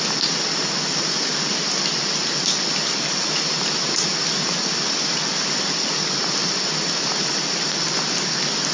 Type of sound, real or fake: real